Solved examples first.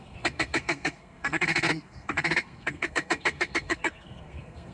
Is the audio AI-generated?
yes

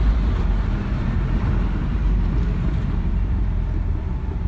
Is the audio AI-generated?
yes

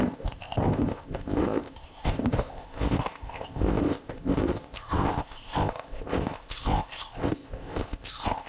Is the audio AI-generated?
yes